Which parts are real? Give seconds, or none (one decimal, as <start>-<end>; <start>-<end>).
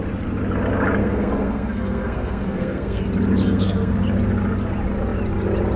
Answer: 0.0-1.0; 3.0-3.4; 3.9-5.8